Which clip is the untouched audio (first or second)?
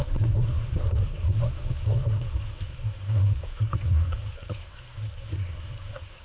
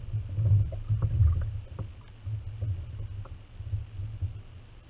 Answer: second